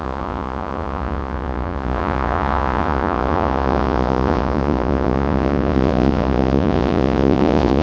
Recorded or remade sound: remade